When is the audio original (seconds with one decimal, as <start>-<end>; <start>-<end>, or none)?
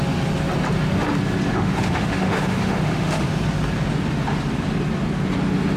0.0-1.5; 3.3-5.8